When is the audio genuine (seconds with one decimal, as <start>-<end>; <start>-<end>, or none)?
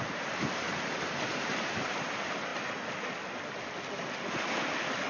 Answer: 2.5-5.1